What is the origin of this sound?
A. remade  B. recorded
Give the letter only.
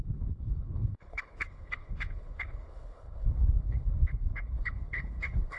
A